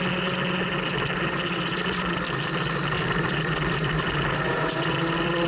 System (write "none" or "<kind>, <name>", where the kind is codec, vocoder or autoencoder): vocoder, BigVGAN v2